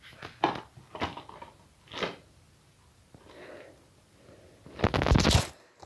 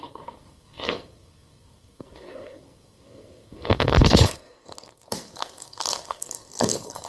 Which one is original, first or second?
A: first